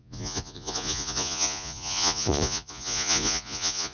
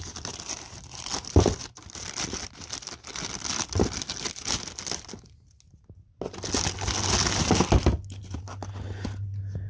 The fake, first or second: first